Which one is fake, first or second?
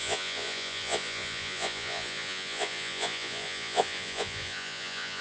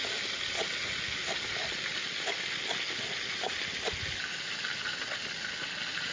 first